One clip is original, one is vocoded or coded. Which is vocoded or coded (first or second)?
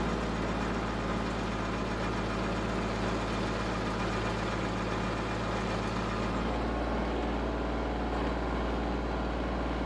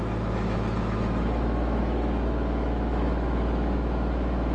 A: second